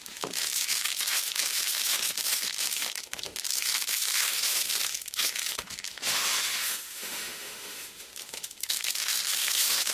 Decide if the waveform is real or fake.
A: fake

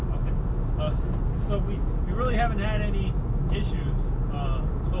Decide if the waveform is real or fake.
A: real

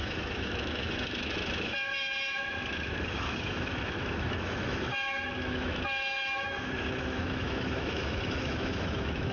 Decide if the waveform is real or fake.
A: fake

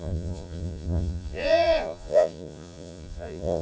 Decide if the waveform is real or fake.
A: fake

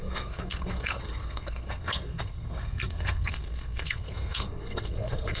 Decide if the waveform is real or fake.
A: fake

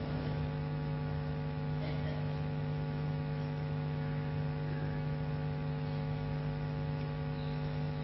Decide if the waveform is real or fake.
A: fake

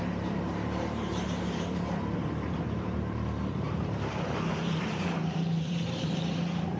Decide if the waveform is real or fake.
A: fake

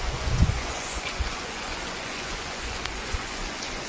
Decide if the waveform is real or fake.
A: fake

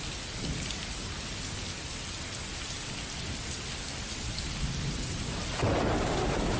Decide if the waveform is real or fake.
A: real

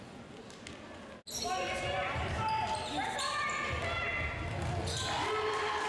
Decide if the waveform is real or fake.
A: real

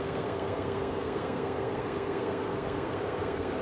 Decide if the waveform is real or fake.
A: fake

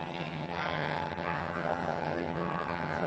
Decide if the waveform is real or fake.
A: fake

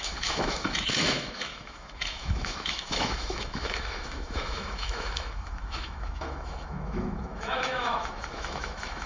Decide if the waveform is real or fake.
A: fake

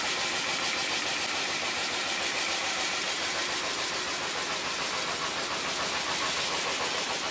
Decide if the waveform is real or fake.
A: real